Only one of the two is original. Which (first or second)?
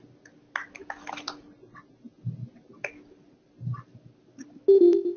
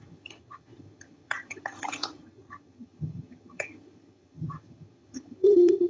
first